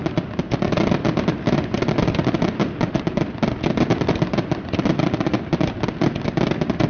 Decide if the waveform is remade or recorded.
recorded